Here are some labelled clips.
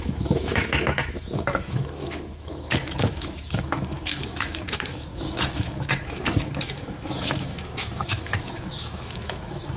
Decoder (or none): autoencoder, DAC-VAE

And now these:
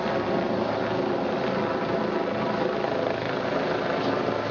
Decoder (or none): none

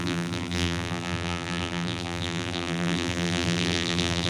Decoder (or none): vocoder, BigVGAN v2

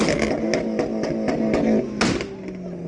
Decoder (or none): none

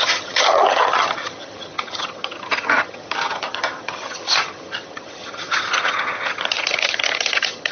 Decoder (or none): vocoder, HiFi-GAN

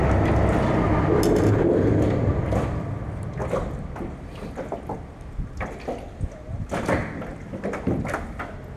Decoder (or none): none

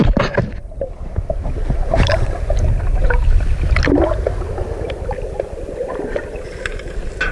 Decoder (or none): none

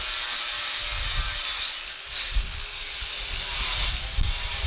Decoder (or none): none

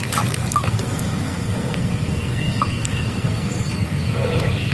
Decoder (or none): codec, SNAC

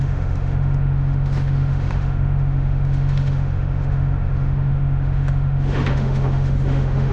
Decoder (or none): autoencoder, DAC-VAE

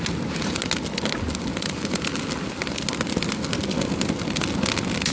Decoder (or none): none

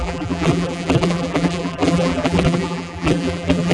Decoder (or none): vocoder, BigVGAN v2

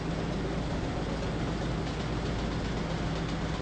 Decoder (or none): none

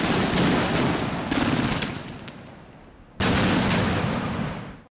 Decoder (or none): none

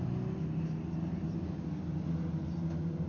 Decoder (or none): none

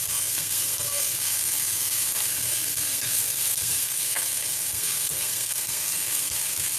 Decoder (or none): codec, SNAC